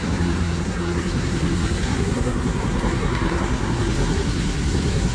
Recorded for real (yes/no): no